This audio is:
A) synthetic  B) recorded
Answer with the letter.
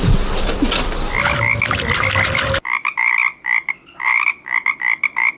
B